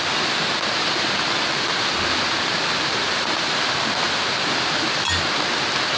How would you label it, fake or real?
real